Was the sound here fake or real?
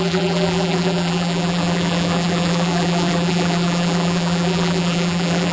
fake